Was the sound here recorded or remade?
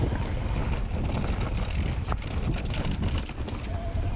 recorded